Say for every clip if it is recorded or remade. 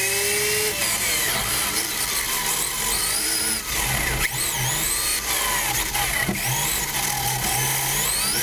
recorded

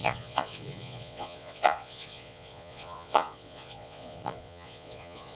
remade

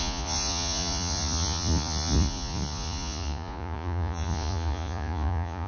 remade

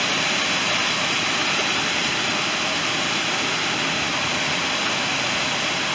recorded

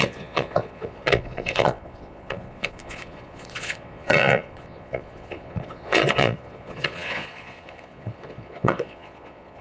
remade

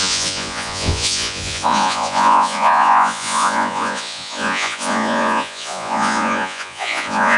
remade